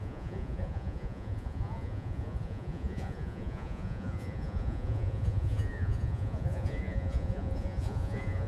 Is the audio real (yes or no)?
no